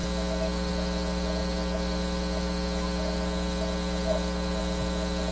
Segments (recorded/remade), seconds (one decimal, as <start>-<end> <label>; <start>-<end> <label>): 0.0-5.3 recorded

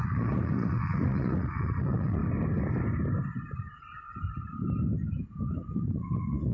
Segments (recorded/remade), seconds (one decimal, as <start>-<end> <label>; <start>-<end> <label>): 0.0-2.2 remade; 2.2-5.5 recorded; 5.5-6.5 remade

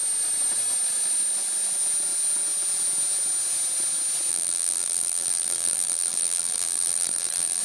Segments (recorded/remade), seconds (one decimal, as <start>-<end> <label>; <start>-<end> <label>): 0.0-4.3 recorded; 4.3-7.6 remade

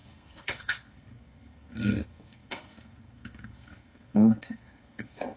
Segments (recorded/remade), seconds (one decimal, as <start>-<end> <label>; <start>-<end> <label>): 0.0-5.4 remade

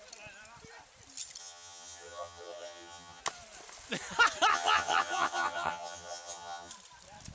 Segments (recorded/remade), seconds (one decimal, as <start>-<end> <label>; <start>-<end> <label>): 0.0-1.4 recorded; 1.4-3.2 remade; 3.2-4.5 recorded; 4.5-6.7 remade; 6.7-7.3 recorded